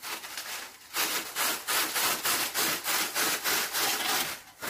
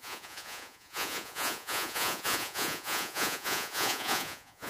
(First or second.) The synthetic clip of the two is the second